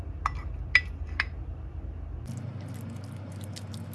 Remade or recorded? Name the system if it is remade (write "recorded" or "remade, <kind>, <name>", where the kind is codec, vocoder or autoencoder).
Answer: recorded